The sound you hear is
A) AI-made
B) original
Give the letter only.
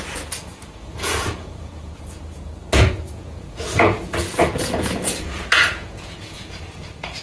A